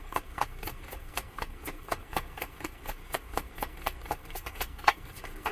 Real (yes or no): no